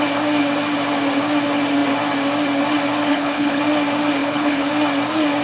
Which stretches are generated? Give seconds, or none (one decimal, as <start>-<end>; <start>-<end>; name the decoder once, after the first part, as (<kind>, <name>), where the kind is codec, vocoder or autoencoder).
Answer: 3.1-3.6 (codec, HILCodec); 4.2-4.7